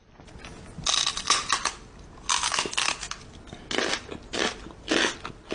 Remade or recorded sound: recorded